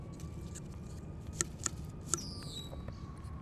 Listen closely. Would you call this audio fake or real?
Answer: real